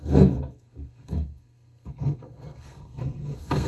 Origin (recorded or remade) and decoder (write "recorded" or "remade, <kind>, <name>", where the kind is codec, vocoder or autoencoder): remade, codec, SNAC